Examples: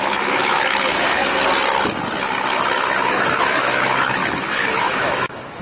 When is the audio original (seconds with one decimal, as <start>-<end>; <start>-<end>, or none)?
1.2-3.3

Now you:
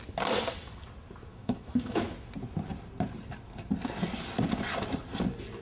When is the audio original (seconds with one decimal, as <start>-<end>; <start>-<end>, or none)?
0.0-1.3; 2.0-5.6

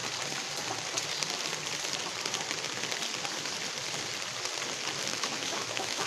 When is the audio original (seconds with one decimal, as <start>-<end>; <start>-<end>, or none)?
0.0-5.1

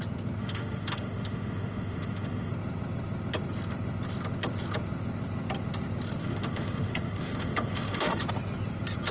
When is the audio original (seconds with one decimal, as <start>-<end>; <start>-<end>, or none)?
0.0-0.4; 2.5-6.2; 8.2-9.1

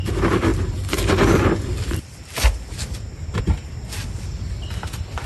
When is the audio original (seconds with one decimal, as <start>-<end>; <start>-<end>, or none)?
0.0-5.3

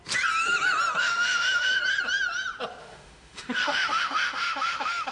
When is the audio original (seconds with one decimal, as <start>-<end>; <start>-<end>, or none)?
0.0-1.0; 1.8-2.8